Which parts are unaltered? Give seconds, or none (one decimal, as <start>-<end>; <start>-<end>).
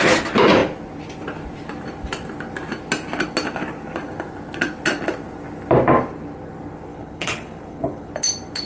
0.0-6.9; 8.1-8.7